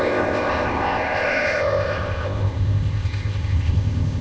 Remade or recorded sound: remade